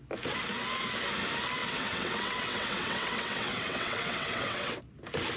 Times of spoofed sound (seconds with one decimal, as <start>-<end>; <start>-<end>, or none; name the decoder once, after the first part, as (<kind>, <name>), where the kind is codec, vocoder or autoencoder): 1.6-4.8 (vocoder, WaveNeXt)